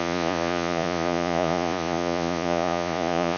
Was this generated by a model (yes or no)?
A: yes